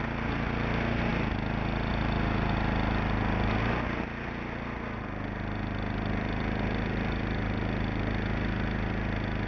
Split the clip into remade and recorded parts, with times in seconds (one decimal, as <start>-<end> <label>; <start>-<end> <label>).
0.0-9.5 recorded